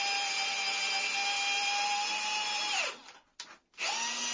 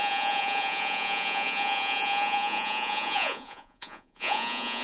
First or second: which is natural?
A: first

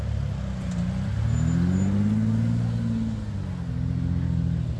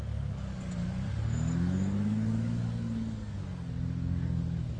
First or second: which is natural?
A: first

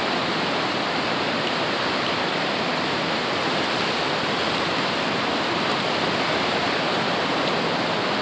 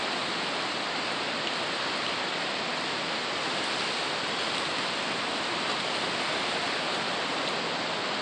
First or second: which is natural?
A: second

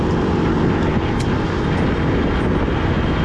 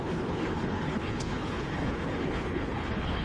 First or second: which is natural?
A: first